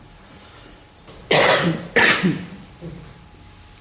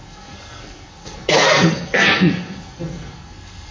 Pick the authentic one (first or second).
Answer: first